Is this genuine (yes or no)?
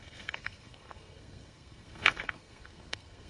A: no